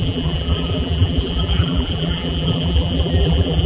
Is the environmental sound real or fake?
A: fake